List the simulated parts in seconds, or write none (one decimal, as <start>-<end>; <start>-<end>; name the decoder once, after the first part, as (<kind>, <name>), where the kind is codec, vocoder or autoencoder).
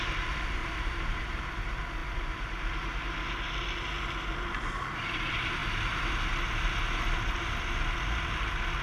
0.6-1.3 (vocoder, BigVGAN v2); 2.0-2.9